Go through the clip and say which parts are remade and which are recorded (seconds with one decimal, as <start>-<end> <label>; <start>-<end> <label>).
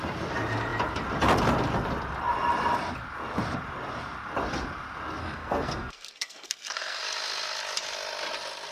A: 0.0-5.2 recorded; 5.2-7.0 remade; 7.0-8.7 recorded